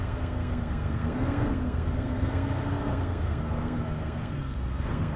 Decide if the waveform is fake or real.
fake